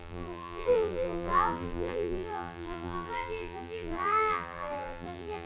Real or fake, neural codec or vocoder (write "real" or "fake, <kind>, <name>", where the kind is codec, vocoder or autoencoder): fake, vocoder, BigVGAN v2